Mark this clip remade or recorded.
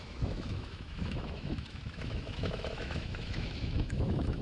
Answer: remade